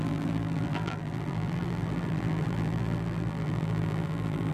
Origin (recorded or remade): remade